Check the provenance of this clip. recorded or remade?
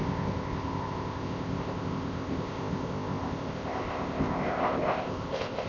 remade